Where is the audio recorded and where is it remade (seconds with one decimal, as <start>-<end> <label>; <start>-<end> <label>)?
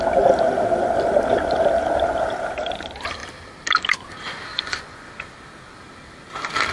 0.0-4.5 recorded; 4.5-5.1 remade; 5.1-6.7 recorded